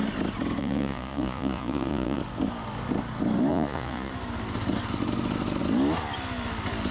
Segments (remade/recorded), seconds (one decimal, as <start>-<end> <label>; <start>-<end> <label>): 0.0-0.6 recorded; 0.6-2.2 remade; 2.2-3.5 recorded; 3.5-4.1 remade; 4.1-6.9 recorded